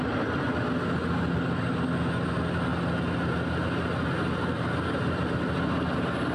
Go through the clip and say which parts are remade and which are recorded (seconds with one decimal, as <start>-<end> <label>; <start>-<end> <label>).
0.0-6.3 recorded